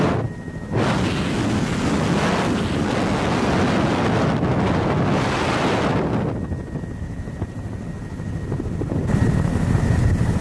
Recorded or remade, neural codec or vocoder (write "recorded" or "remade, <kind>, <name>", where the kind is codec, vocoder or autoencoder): recorded